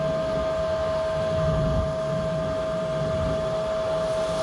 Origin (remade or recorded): recorded